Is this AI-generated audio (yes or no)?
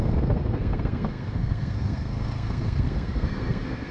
yes